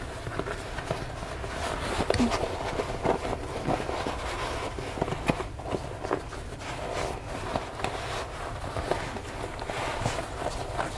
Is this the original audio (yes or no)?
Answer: yes